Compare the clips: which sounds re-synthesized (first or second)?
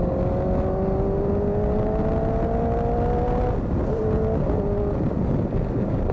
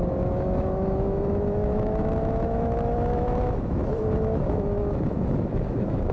second